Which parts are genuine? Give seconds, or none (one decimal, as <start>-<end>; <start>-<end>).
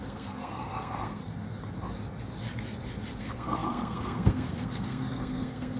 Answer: 1.2-3.2